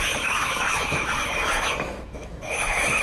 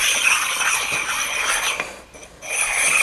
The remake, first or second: first